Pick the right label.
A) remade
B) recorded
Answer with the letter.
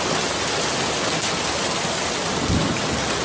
B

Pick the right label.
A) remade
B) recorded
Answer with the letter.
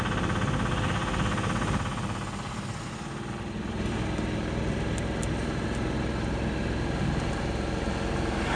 B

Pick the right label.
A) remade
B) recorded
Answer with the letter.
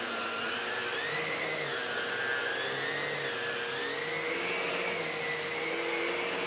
B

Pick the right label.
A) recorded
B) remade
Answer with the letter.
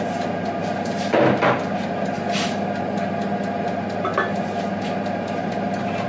A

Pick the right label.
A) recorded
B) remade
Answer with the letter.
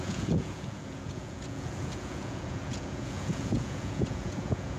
B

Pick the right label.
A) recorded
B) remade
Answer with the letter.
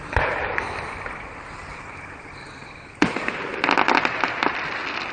A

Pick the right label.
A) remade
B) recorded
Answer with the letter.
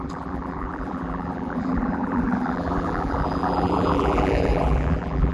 A